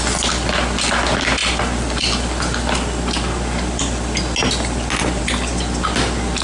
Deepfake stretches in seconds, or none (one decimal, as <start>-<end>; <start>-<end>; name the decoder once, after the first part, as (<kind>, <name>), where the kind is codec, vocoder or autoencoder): none